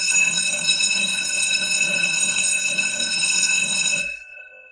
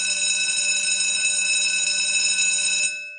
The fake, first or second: first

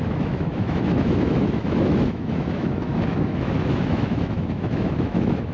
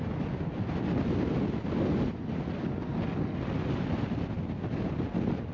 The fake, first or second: first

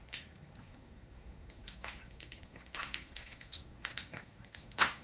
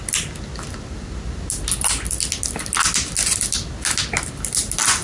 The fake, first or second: first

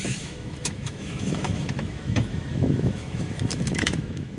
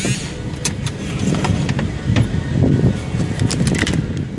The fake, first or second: first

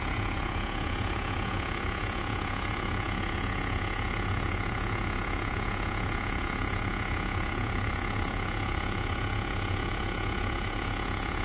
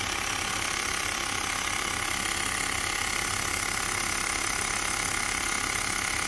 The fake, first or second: first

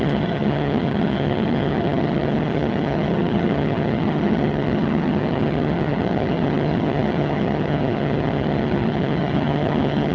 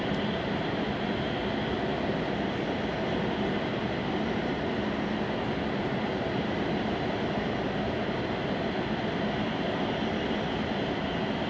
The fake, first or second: first